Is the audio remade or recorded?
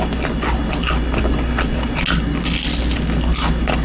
recorded